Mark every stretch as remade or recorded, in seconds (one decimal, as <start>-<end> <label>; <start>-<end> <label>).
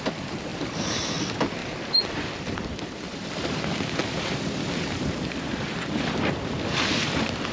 0.0-1.6 recorded; 1.6-3.6 remade; 3.6-7.5 recorded